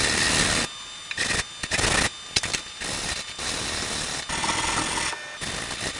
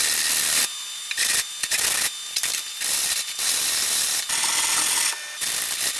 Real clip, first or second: first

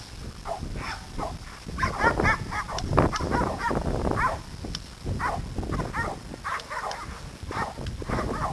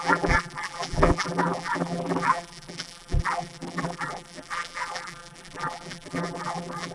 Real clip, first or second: first